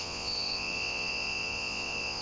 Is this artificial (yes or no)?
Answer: yes